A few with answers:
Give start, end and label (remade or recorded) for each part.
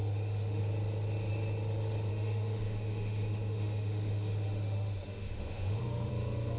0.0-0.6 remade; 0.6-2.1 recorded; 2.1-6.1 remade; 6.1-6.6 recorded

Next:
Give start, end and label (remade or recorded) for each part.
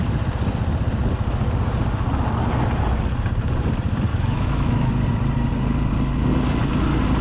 0.0-4.1 recorded; 4.1-4.9 remade; 4.9-7.2 recorded